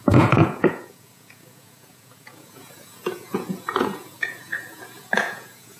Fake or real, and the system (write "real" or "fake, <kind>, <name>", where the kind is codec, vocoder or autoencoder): fake, vocoder, Vocos